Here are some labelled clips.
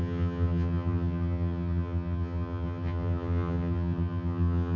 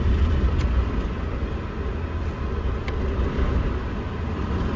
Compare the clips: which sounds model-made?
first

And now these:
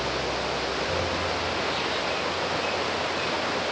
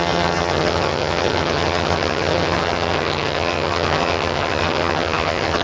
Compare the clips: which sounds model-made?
second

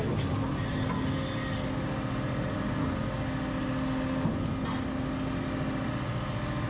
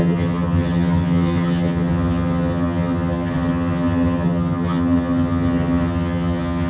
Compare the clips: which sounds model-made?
second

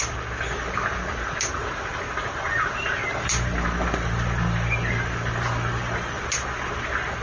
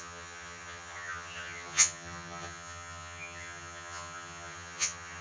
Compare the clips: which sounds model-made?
second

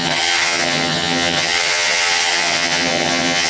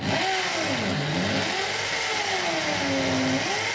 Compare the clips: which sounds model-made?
first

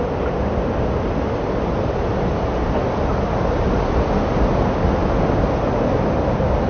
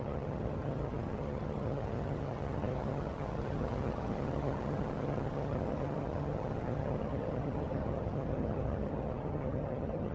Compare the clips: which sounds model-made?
second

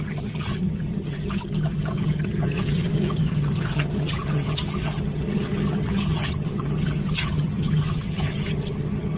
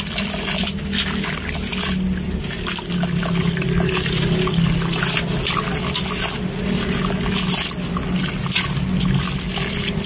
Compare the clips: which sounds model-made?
first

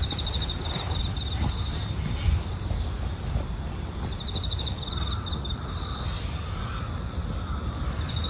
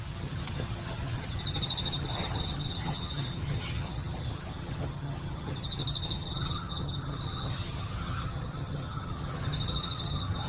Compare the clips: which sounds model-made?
second